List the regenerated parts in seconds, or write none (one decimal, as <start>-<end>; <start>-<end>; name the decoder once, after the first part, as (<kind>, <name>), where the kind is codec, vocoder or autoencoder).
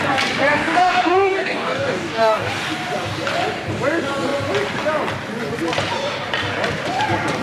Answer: 0.5-2.5 (codec, DAC)